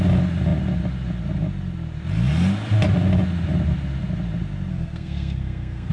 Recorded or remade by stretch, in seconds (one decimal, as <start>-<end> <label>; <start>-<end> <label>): 0.0-4.7 recorded; 4.7-5.9 remade